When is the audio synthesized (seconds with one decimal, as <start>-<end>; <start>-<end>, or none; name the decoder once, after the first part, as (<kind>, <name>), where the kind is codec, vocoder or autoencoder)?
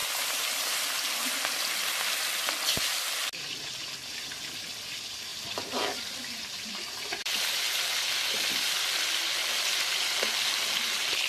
5.3-6.7 (vocoder, BigVGAN v2); 7.2-8.3